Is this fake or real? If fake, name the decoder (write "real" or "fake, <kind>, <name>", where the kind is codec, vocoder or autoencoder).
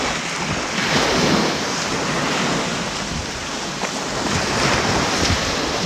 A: real